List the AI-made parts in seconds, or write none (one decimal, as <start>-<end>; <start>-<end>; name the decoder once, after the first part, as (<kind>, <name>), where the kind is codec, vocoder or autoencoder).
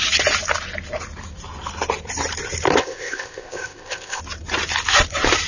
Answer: 2.8-4.2 (codec, ZipCodec)